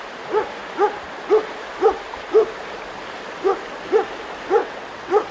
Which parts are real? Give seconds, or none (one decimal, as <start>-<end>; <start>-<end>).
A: 0.0-4.6